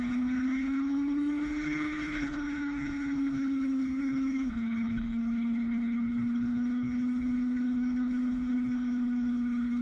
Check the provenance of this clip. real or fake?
fake